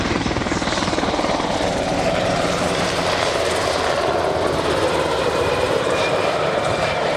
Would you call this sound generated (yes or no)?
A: yes